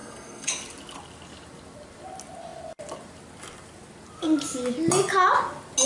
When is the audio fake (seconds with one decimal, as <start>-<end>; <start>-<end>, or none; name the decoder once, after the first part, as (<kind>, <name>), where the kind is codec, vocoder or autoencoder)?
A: 0.0-0.5 (codec, SNAC)